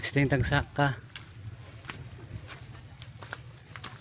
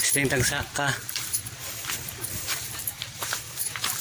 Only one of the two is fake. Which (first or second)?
second